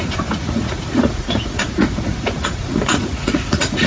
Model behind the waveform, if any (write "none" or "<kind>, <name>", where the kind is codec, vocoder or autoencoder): vocoder, Vocos